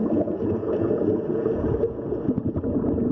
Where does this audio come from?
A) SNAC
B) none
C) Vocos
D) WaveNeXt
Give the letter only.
C